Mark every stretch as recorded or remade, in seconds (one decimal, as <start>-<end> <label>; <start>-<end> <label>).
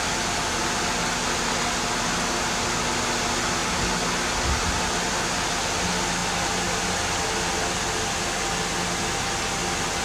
0.0-10.0 recorded